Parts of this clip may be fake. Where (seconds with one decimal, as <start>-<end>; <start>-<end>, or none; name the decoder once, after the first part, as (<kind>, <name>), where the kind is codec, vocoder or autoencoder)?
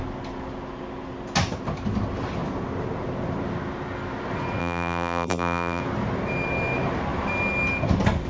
4.6-5.8 (vocoder, BigVGAN v2)